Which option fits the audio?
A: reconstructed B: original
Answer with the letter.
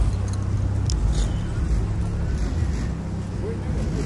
B